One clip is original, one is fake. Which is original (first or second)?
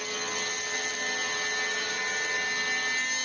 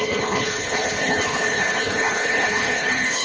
first